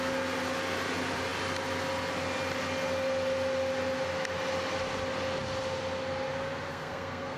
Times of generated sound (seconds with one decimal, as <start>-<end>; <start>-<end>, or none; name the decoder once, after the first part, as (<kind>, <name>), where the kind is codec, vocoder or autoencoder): 6.7-7.4 (codec, SNAC)